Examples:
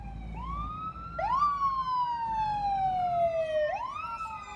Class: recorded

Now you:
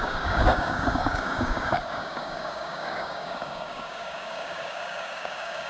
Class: remade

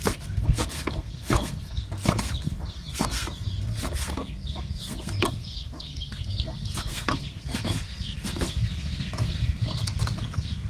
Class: remade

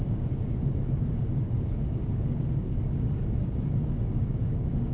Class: remade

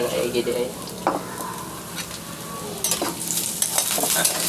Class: recorded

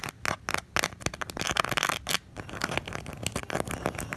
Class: recorded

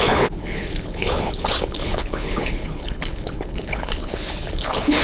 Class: remade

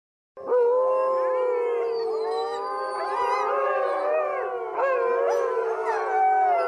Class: recorded